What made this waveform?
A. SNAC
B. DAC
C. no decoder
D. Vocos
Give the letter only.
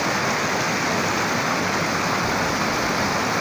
C